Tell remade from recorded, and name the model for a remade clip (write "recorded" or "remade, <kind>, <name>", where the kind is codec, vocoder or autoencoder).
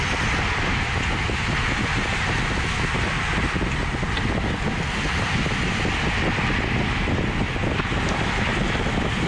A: recorded